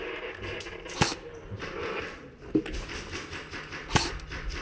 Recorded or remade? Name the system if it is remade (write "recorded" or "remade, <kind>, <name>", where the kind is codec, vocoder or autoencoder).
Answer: recorded